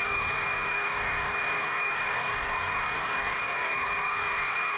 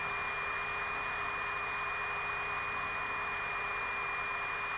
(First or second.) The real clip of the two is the second